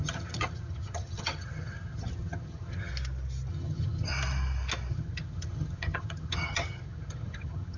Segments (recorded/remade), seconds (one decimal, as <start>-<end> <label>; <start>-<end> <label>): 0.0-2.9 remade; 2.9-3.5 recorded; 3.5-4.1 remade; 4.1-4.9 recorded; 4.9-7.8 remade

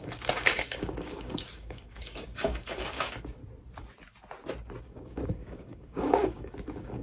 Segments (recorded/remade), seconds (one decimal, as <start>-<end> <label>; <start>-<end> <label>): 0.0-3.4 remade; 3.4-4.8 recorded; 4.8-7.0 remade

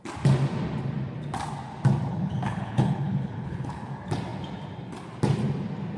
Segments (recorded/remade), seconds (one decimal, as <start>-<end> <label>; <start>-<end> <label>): 0.0-2.1 recorded; 2.1-3.9 remade; 3.9-6.0 recorded

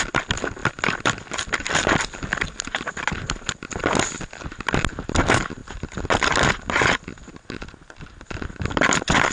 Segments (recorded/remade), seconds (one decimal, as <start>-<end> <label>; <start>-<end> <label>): 0.0-9.3 recorded

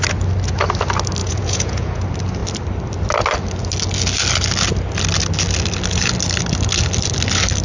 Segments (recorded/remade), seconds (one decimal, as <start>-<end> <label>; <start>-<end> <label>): 0.0-1.2 recorded; 1.2-2.0 remade; 2.0-7.6 recorded

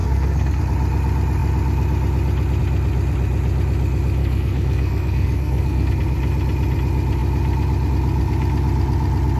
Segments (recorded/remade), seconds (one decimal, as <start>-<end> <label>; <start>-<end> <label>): 0.0-0.6 remade; 0.6-4.2 recorded; 4.2-5.9 remade; 5.9-9.4 recorded

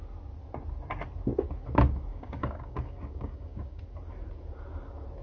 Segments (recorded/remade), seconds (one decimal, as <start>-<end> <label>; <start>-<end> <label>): 0.0-2.1 recorded; 2.1-3.8 remade; 3.8-5.2 recorded